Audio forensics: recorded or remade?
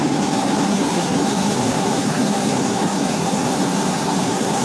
remade